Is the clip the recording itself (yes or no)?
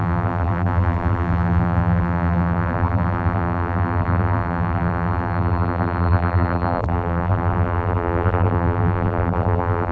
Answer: no